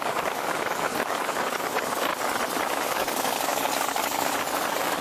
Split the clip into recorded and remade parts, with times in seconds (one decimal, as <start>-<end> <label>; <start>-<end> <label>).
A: 0.0-2.1 remade; 2.1-2.7 recorded; 2.7-5.0 remade